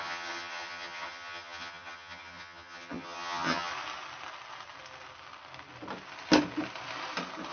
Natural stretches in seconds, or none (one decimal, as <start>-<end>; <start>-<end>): 3.7-7.5

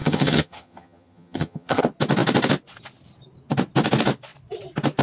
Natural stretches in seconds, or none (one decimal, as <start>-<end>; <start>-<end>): 1.8-5.0

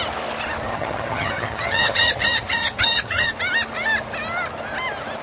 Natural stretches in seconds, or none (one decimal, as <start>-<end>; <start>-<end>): 0.0-0.7; 3.3-5.2

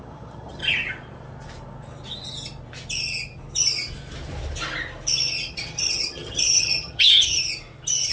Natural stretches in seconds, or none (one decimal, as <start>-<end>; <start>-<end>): 0.6-5.5; 7.4-8.1

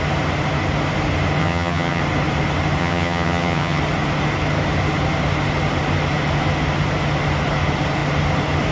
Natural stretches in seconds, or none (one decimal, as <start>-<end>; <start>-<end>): 0.0-1.4; 2.0-2.8; 3.8-8.7

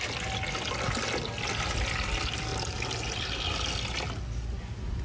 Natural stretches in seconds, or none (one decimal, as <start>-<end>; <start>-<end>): 0.0-5.0